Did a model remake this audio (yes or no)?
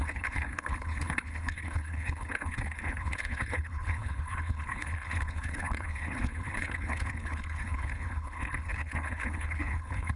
yes